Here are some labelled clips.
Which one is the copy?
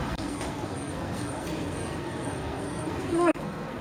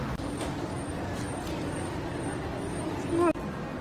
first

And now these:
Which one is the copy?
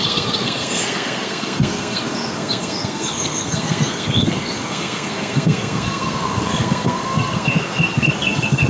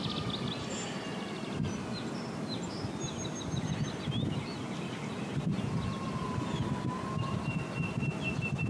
first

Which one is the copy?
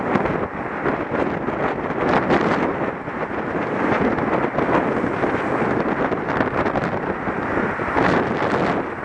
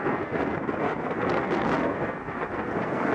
second